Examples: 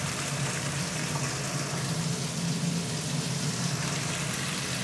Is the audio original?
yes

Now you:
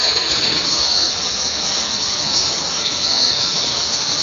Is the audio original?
no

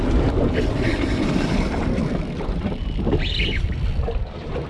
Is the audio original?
yes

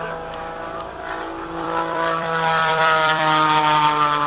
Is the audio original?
no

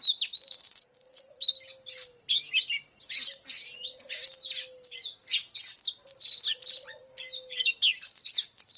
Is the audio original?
yes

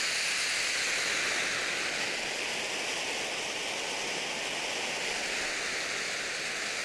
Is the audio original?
yes